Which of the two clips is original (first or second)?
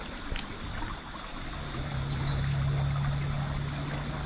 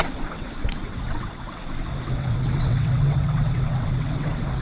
first